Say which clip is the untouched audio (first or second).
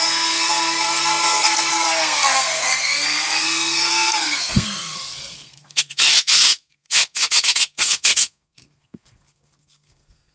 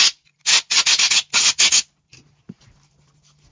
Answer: second